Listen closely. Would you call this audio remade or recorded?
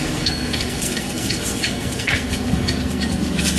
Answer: remade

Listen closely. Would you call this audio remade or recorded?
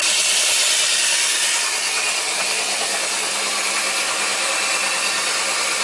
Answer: recorded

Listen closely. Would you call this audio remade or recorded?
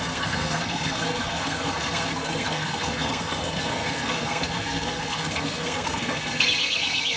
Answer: remade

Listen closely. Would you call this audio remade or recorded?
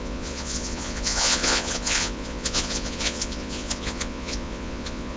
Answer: remade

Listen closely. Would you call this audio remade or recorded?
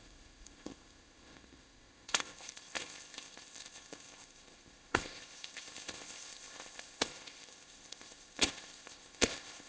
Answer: remade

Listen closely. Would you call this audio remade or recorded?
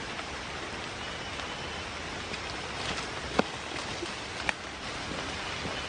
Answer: recorded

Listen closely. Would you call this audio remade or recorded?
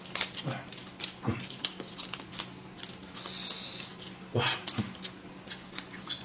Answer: recorded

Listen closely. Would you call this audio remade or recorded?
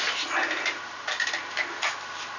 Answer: recorded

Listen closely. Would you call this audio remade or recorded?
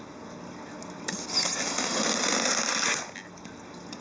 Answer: recorded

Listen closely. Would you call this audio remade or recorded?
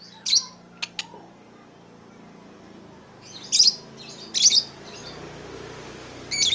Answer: recorded